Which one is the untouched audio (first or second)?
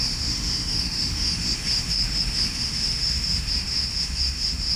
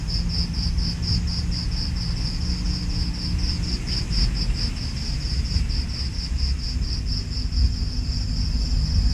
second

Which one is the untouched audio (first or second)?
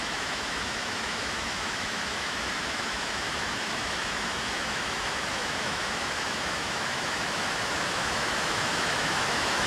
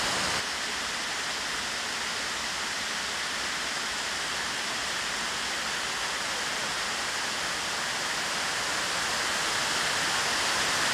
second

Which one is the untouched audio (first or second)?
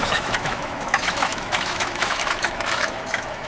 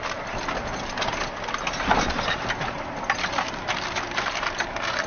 second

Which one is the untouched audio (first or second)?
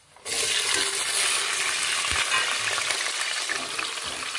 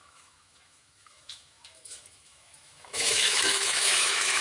first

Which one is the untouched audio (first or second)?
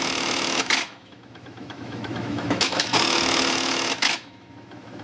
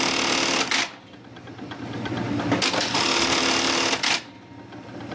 second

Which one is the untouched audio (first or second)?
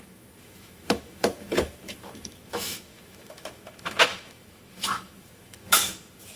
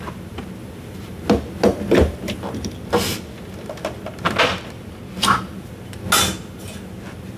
second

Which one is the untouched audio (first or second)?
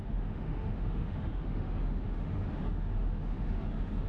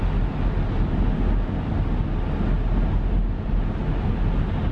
second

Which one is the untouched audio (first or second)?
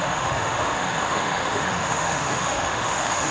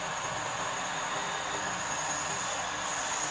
second